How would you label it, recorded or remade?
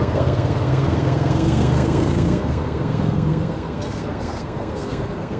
remade